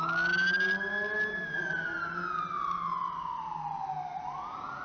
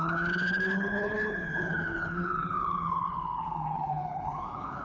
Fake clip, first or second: second